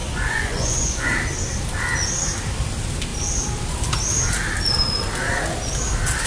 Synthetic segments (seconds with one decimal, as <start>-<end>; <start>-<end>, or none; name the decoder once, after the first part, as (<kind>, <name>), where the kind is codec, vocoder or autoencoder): 0.0-1.1 (vocoder, Vocos)